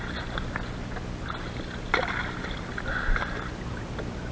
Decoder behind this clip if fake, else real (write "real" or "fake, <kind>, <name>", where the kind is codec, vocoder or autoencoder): real